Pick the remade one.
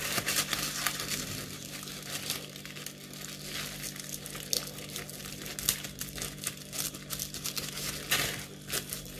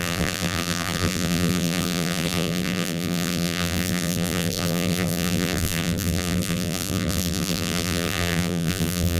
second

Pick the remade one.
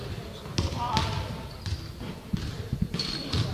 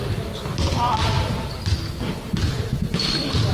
first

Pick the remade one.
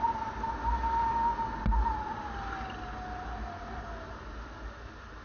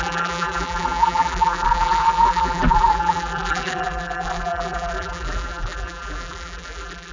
second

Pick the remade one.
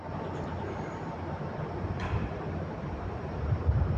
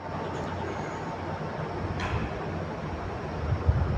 first